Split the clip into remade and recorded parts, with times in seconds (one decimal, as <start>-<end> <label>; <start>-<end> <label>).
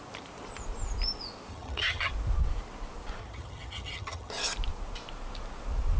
0.0-1.5 recorded; 1.5-2.1 remade; 2.1-3.2 recorded; 3.2-4.3 remade; 4.3-6.0 recorded